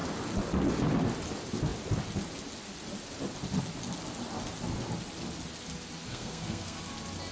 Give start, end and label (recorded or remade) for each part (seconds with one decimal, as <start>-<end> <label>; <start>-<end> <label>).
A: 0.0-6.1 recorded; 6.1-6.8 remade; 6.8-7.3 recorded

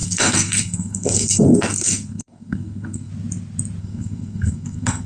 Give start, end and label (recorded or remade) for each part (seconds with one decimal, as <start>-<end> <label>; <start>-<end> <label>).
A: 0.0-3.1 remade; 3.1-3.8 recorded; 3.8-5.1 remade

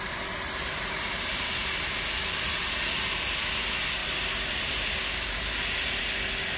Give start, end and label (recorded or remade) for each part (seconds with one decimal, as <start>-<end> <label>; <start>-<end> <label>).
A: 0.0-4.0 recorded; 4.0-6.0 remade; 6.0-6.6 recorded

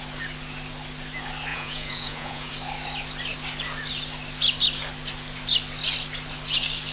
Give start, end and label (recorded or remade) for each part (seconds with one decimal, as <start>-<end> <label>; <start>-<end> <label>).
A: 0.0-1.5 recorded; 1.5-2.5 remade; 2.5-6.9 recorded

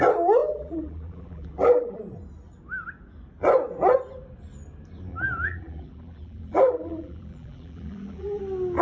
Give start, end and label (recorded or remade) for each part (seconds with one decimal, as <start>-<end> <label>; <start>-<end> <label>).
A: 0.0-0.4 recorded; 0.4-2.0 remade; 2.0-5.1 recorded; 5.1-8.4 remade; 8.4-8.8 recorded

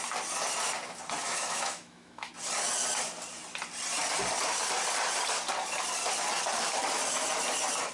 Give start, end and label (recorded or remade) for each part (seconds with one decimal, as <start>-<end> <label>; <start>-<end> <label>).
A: 0.0-1.2 recorded; 1.2-2.3 remade; 2.3-7.9 recorded

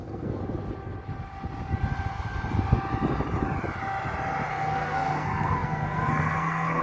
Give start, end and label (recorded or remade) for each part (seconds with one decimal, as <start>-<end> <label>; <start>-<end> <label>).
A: 0.0-0.4 remade; 0.4-4.5 recorded; 4.5-6.8 remade